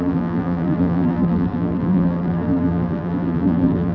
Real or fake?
fake